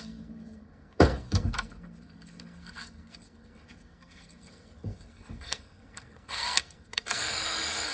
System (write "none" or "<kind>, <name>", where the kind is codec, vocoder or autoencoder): codec, SNAC